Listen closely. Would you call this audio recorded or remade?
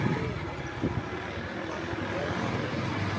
recorded